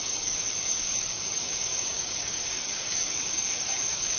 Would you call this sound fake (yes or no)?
yes